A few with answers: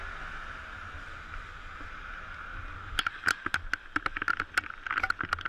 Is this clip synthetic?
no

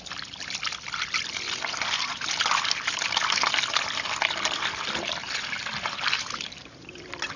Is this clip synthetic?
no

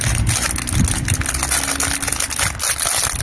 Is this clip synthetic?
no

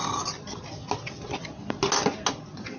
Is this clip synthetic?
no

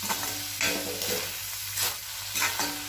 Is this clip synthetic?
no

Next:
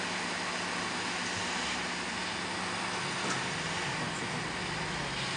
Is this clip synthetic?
no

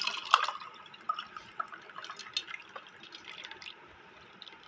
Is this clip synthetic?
no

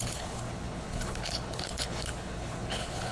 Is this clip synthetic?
yes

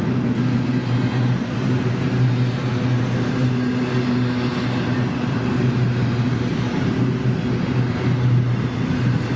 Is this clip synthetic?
no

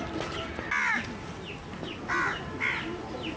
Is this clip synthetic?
no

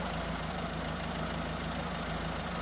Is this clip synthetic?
no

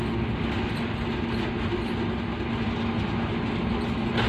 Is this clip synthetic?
no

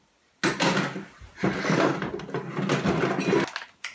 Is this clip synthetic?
no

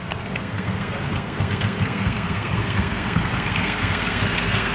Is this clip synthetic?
yes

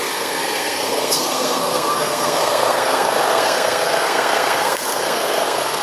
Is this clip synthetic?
yes